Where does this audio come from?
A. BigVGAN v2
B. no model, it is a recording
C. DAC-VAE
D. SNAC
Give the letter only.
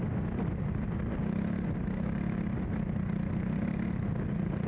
B